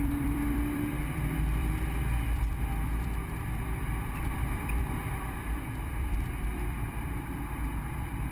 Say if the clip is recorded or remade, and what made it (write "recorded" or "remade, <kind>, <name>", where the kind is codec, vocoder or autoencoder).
remade, vocoder, BigVGAN v2